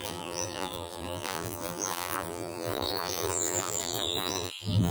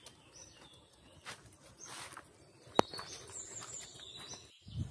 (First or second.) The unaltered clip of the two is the second